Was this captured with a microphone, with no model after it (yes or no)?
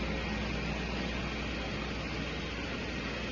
yes